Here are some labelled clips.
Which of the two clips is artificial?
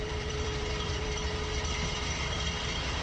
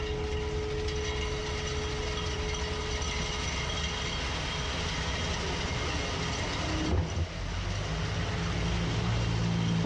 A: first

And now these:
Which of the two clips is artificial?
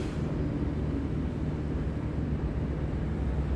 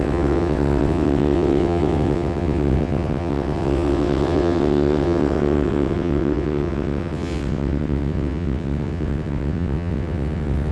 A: second